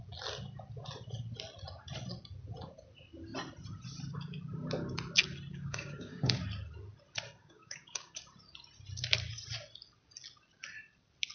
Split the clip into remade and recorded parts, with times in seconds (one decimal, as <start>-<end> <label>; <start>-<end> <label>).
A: 0.0-5.5 recorded; 5.5-6.4 remade; 6.4-7.4 recorded; 7.4-8.2 remade; 8.2-11.3 recorded